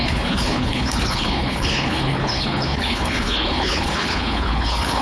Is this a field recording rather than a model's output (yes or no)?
no